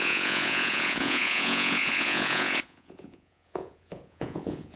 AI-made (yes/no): yes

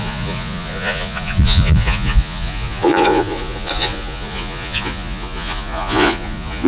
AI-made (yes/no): yes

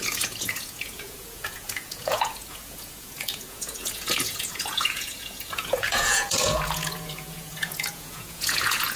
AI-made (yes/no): yes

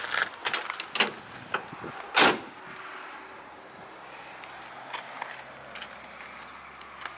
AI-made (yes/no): no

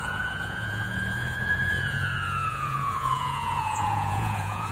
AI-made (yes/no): yes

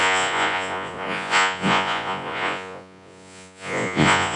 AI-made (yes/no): yes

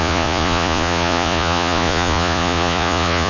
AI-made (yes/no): yes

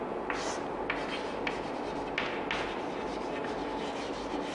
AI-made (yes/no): no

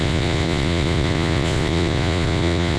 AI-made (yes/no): yes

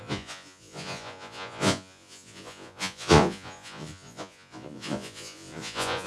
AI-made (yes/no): yes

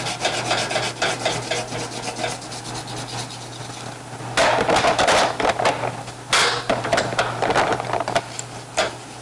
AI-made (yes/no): no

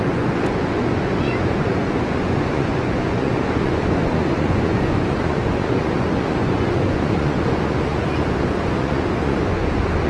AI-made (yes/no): yes